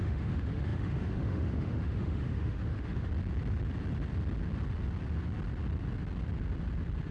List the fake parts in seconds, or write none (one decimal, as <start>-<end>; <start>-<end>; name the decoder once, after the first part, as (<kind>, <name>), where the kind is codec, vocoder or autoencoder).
0.0-3.1 (autoencoder, DAC-VAE)